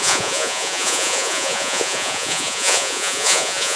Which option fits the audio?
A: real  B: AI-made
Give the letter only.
B